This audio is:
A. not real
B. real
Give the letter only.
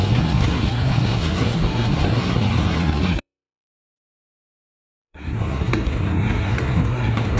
A